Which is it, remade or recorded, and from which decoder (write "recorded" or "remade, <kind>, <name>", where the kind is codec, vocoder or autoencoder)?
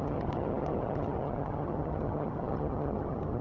remade, vocoder, HiFi-GAN